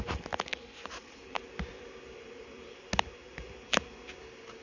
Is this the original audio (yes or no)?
yes